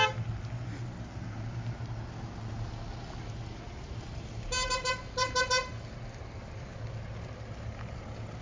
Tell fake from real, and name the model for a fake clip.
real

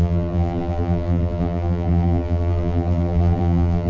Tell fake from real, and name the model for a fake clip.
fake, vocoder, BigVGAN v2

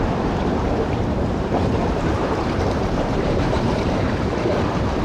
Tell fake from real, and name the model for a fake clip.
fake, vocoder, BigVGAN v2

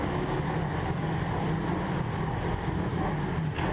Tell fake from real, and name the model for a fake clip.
real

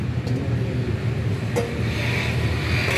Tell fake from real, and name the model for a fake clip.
real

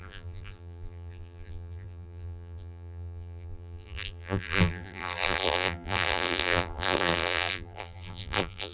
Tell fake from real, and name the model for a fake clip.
fake, vocoder, BigVGAN v2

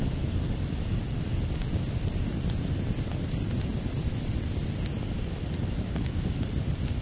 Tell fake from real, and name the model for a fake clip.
real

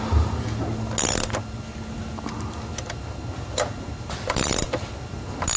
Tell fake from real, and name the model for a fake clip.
real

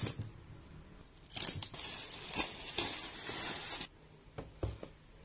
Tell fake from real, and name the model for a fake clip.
real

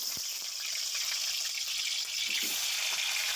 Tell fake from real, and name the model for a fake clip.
real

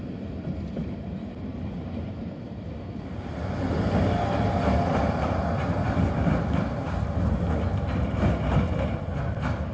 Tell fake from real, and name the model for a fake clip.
real